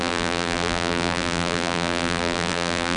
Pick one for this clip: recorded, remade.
remade